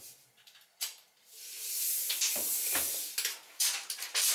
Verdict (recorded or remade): recorded